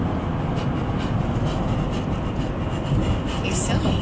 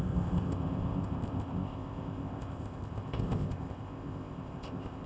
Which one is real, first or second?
first